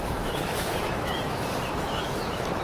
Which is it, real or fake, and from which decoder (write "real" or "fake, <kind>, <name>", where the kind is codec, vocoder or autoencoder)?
fake, autoencoder, DAC-VAE